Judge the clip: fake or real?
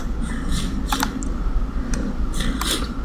real